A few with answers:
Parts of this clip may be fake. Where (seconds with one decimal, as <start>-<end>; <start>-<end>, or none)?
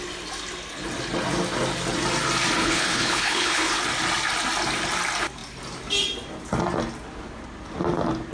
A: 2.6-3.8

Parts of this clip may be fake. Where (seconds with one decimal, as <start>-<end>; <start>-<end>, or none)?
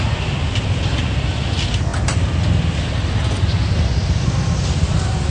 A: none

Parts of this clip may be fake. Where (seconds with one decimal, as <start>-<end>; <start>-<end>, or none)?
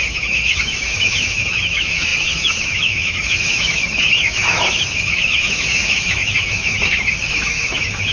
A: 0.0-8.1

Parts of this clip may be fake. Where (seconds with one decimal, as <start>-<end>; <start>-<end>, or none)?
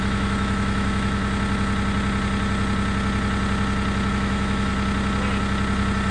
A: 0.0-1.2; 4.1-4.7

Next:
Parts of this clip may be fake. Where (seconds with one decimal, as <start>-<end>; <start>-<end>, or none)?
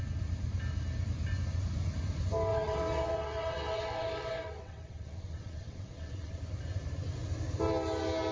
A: 2.5-6.4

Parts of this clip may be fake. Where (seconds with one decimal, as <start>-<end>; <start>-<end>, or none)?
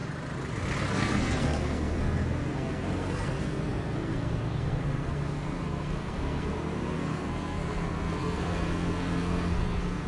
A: 0.8-10.1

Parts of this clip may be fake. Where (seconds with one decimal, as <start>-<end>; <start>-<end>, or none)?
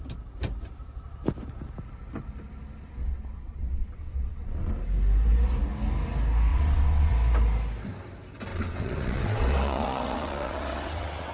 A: 3.0-4.7; 6.5-7.1; 8.5-11.3